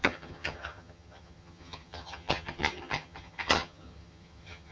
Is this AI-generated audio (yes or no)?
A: yes